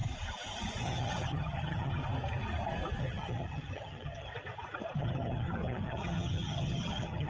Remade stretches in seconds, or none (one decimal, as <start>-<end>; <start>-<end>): 0.8-2.0; 3.0-4.3; 5.0-7.3